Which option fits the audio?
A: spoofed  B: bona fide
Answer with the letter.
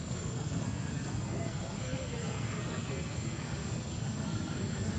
A